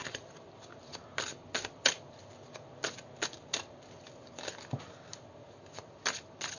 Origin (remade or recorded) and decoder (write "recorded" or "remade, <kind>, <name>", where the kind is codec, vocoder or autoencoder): recorded